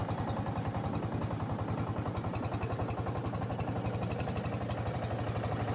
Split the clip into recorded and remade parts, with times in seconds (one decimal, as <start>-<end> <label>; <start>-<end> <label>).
0.0-5.7 recorded